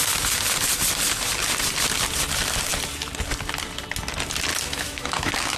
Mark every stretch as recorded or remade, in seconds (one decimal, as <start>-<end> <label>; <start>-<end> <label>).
0.0-4.5 recorded; 4.5-5.6 remade